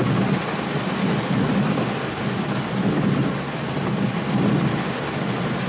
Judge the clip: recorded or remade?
recorded